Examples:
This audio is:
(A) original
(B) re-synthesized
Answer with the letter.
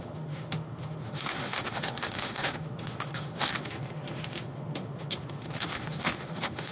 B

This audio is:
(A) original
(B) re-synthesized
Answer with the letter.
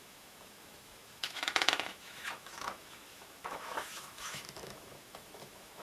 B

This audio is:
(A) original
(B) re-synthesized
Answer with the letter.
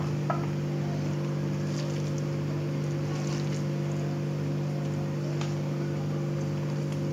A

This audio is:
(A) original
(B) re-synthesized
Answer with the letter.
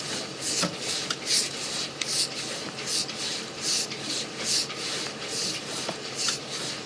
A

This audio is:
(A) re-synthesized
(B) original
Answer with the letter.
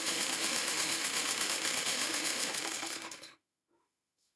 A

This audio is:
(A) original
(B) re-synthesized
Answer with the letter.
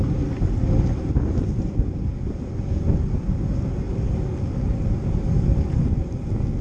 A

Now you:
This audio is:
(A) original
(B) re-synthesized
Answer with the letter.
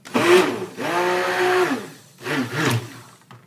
A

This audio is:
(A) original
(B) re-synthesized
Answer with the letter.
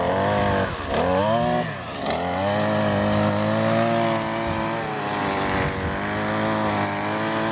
A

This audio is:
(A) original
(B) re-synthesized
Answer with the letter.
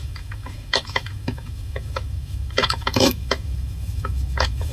B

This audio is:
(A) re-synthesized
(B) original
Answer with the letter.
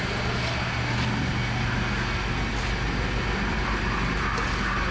B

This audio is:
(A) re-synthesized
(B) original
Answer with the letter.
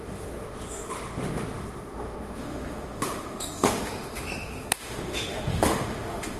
A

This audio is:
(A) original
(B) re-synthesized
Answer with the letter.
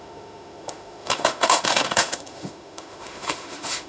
B